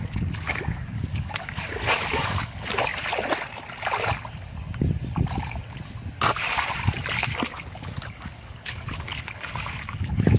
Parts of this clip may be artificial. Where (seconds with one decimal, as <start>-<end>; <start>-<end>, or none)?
0.0-2.9; 7.5-10.4

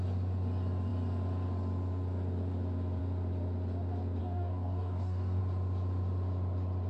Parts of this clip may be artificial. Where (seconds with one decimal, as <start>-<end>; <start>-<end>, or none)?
4.2-5.4

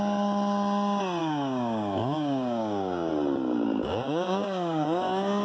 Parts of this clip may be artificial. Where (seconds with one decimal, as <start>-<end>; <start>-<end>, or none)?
1.2-3.1; 3.8-5.4